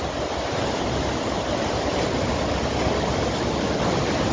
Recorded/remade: recorded